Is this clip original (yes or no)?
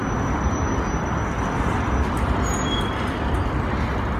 yes